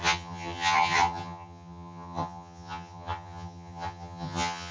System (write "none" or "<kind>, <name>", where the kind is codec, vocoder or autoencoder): vocoder, HiFi-GAN